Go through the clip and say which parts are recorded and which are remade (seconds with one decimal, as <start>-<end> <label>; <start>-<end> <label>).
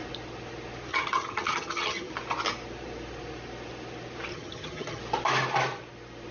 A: 0.0-0.9 recorded; 0.9-2.1 remade; 2.1-4.3 recorded; 4.3-5.0 remade; 5.0-6.3 recorded